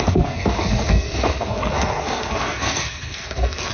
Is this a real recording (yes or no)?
no